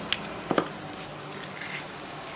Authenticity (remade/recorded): recorded